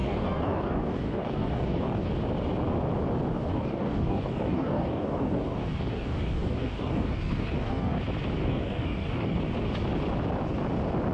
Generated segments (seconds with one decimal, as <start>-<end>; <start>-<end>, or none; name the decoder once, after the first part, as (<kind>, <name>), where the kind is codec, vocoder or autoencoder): 0.0-2.1 (codec, DAC); 3.3-8.0; 8.4-9.4